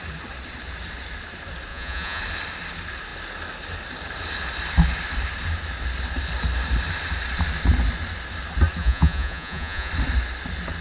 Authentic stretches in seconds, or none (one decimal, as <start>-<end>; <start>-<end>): 0.0-1.7; 2.2-8.8; 9.9-10.8